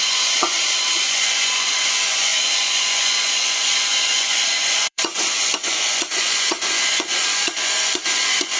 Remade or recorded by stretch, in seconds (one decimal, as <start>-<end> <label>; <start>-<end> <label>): 0.0-8.6 remade